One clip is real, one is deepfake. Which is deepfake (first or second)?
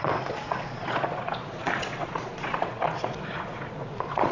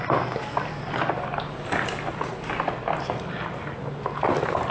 first